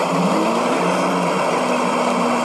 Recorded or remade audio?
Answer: recorded